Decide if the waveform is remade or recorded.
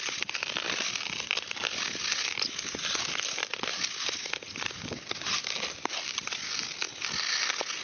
recorded